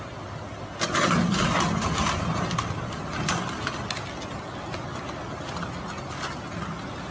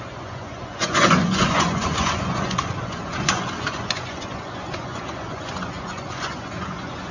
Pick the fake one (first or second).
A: second